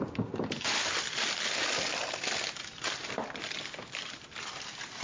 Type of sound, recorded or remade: remade